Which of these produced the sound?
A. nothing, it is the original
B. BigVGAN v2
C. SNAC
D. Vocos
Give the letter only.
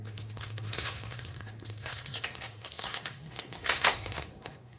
C